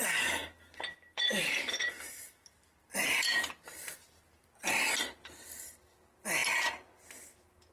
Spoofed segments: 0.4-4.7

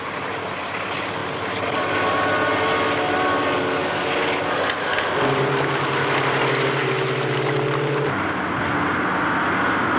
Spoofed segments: none

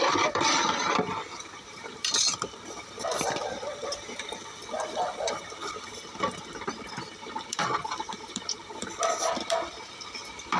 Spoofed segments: 0.0-5.6; 6.9-10.6

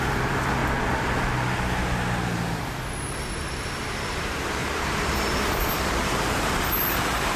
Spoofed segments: 0.0-0.6; 3.1-7.4